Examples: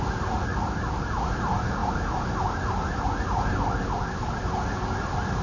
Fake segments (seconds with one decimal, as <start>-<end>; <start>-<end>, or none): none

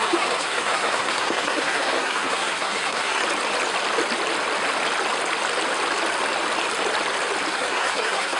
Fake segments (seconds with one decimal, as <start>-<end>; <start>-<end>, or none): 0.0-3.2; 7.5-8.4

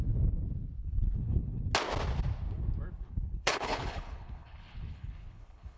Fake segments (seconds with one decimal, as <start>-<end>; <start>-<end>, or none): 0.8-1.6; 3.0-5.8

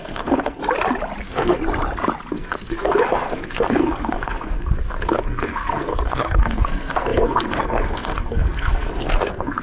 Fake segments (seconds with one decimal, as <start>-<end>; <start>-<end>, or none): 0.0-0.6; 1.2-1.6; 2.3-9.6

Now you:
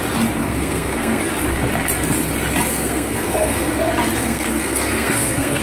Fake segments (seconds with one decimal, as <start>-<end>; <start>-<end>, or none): 0.4-1.2; 2.7-3.8; 4.2-5.6

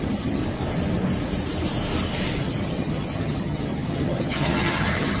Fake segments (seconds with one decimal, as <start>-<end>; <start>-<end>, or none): 0.0-0.4; 2.4-5.2